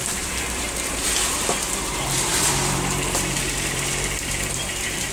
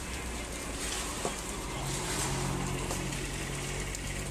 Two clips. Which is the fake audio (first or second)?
first